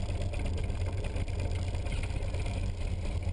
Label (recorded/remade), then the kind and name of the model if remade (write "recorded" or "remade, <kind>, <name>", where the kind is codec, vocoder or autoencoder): recorded